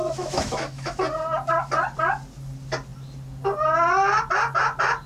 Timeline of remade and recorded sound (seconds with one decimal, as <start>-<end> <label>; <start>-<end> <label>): 0.0-1.0 remade; 1.0-5.1 recorded